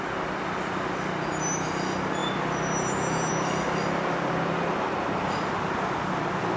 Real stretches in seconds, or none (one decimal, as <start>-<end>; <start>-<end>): 0.0-6.6